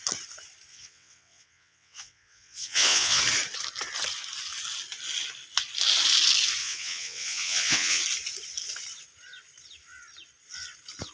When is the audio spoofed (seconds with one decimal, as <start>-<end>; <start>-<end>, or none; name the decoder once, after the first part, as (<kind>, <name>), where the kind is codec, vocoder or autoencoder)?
0.7-3.2 (vocoder, WaveNeXt); 6.6-8.0